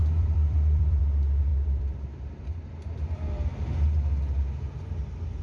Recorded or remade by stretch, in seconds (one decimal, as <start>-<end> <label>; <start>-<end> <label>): 0.0-1.0 remade; 1.0-1.5 recorded; 1.5-2.7 remade; 2.7-5.4 recorded